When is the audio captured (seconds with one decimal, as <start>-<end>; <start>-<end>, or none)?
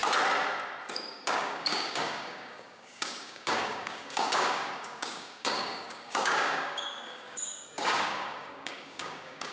0.0-0.9